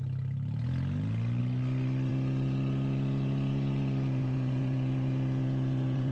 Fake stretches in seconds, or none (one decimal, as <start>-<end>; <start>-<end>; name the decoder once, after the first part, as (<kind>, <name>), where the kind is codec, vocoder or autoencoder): 2.1-6.1 (vocoder, Vocos)